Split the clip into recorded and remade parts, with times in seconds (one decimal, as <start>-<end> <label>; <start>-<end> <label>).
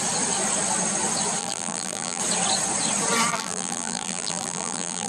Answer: 0.0-1.4 recorded; 1.4-2.2 remade; 2.2-3.3 recorded; 3.3-5.1 remade